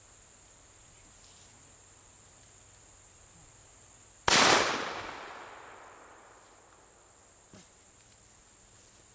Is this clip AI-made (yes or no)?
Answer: no